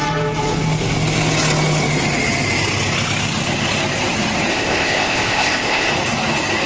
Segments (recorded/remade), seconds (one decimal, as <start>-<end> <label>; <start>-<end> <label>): 0.0-4.5 recorded; 4.5-5.9 remade; 5.9-6.7 recorded